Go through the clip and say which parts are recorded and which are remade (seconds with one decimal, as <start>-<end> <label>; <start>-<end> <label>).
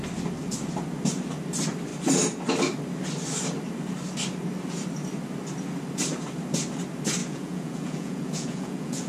0.0-7.2 recorded; 7.2-9.1 remade